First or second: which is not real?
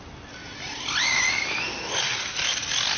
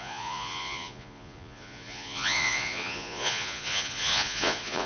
second